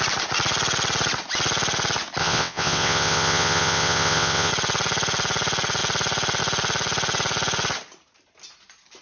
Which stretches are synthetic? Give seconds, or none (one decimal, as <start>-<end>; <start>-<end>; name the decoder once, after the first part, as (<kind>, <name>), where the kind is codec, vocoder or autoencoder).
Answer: 2.2-4.5 (vocoder, WaveNeXt)